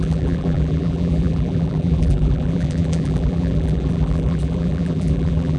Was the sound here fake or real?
fake